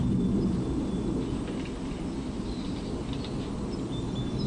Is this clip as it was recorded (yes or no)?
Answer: yes